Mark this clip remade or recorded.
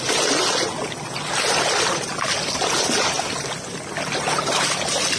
recorded